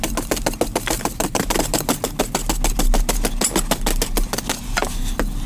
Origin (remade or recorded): recorded